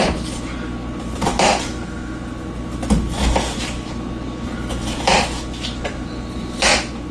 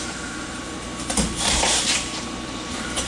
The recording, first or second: first